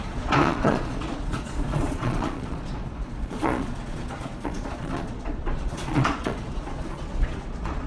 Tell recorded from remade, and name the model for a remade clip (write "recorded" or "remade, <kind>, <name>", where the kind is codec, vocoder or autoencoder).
remade, vocoder, Vocos